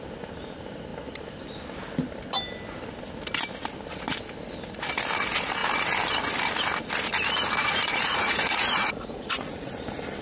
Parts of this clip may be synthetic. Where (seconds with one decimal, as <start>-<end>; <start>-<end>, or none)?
7.6-9.7

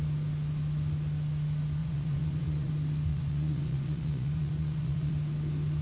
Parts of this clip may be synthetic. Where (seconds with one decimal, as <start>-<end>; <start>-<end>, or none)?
1.8-2.7; 3.1-5.1

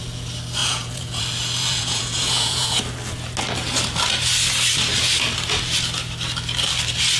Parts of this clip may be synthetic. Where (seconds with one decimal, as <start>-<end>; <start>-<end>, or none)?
0.6-1.2; 1.6-2.8

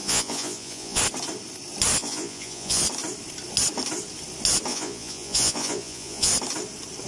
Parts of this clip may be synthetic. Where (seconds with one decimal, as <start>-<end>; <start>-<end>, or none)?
0.0-1.0; 2.0-2.8; 4.7-6.3

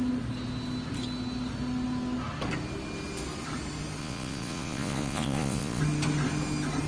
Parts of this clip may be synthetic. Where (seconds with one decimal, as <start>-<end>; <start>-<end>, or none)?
4.0-5.8

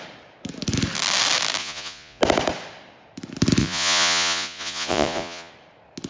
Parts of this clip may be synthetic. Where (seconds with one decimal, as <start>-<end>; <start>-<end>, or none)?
1.6-2.2; 3.6-5.5